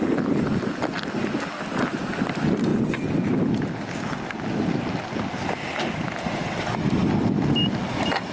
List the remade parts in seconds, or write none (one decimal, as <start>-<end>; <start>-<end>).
none